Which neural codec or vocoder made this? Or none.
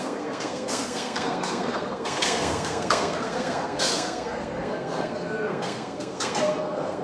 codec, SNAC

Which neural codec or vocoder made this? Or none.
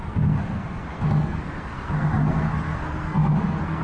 codec, SNAC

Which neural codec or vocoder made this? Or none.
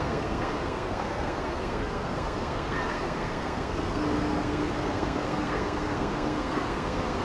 codec, SNAC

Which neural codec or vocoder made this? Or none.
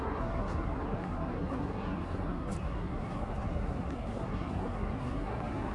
codec, SNAC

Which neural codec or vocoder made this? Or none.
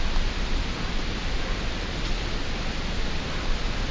none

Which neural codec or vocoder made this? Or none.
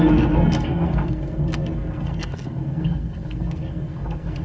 codec, SNAC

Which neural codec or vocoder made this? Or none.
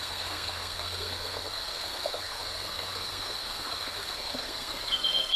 codec, SNAC